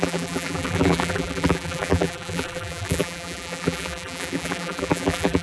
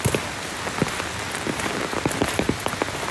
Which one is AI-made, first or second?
first